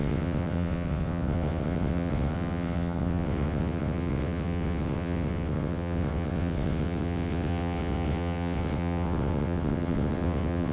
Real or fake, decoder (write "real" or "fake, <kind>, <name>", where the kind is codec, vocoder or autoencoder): fake, vocoder, WaveNeXt